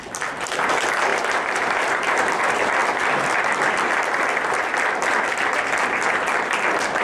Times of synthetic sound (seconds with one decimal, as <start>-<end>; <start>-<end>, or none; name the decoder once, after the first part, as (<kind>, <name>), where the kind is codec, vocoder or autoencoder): 1.1-2.4 (vocoder, BigVGAN v2)